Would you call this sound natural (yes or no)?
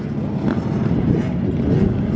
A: yes